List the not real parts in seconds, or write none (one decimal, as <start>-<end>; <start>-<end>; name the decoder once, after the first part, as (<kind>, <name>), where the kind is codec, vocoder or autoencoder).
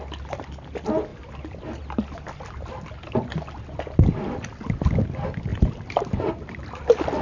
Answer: 5.5-6.3 (vocoder, BigVGAN v2)